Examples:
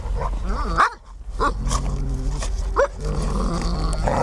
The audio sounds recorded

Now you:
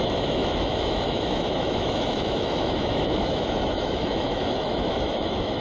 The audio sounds remade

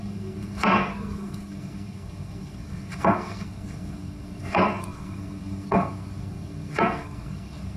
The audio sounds remade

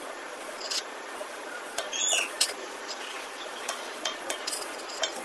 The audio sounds remade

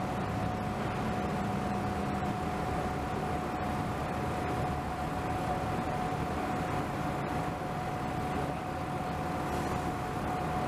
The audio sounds recorded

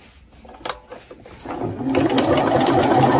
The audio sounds recorded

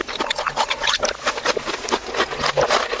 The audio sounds recorded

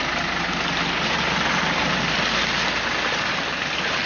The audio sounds recorded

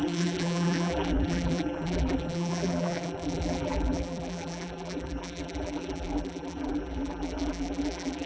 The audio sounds remade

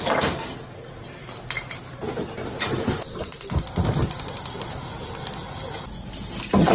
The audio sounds recorded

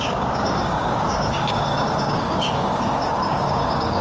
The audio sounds remade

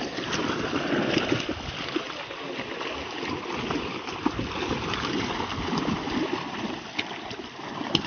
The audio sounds recorded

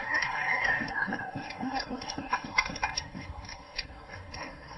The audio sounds remade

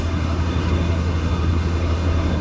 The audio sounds remade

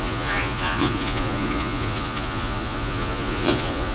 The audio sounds remade